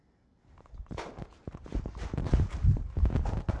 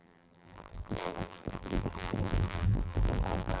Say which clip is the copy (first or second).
second